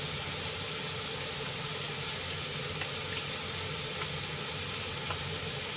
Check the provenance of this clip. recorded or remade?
recorded